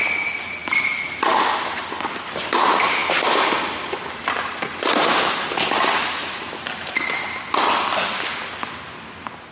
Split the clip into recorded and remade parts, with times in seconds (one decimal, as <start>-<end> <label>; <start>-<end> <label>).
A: 0.0-3.0 recorded; 3.0-4.1 remade; 4.1-9.5 recorded